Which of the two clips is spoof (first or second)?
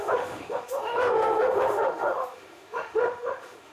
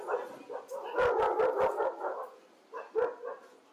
first